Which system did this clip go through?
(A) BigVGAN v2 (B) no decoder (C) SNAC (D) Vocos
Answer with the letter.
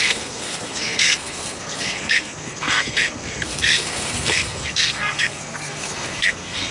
C